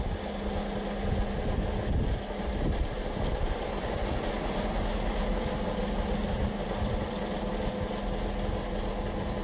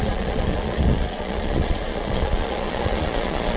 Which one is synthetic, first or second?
second